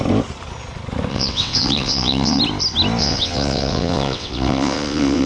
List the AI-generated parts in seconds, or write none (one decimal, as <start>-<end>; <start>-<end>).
1.1-2.4; 3.0-5.3

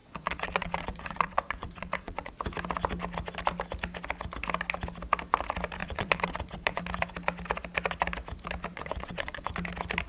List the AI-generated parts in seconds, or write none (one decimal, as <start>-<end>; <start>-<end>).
0.0-2.3; 5.8-6.8; 8.7-9.5

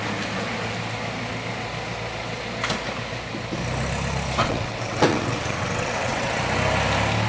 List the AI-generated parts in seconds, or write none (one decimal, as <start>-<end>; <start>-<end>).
4.4-6.4

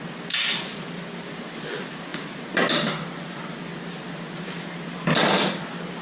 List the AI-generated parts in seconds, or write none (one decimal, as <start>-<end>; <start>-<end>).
none